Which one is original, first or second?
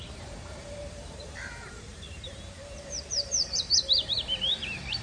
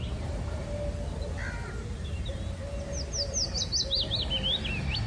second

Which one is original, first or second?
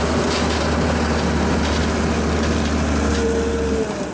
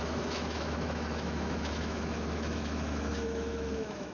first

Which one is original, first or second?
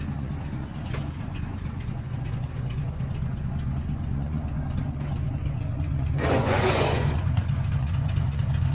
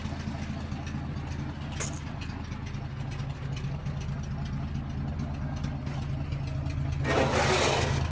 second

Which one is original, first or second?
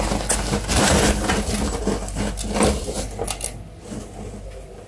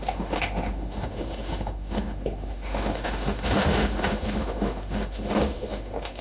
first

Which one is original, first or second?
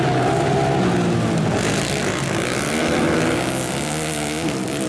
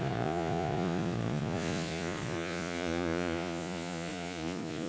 first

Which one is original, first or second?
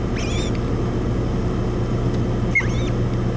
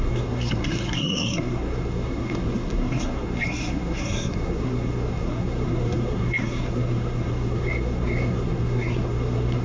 first